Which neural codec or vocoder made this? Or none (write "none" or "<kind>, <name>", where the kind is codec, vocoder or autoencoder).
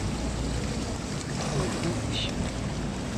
none